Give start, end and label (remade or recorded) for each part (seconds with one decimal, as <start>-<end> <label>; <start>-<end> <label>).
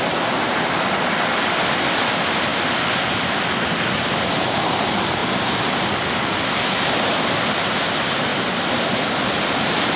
0.0-5.2 recorded; 5.2-5.9 remade; 5.9-8.3 recorded; 8.3-10.0 remade